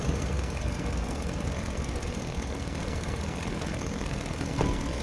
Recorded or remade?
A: remade